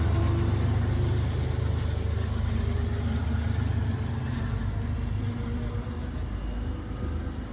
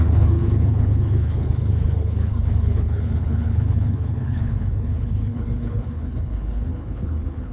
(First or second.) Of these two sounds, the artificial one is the second